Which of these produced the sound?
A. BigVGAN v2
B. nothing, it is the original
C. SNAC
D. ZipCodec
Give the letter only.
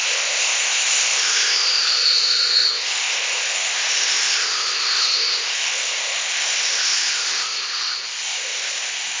D